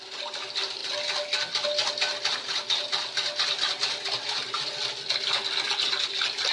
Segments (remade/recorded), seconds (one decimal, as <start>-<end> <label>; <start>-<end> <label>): 0.0-6.5 recorded